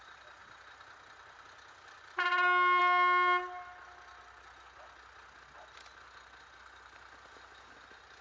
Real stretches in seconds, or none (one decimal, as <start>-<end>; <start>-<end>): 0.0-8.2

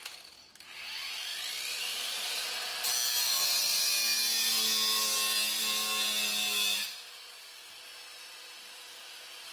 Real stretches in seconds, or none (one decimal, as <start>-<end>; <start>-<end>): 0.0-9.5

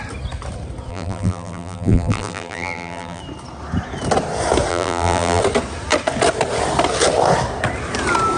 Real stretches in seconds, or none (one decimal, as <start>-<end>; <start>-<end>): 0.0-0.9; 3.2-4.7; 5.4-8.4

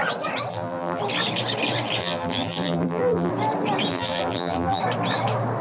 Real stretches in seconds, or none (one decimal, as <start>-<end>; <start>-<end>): 0.0-0.5; 1.0-2.0; 3.3-3.9; 4.8-5.6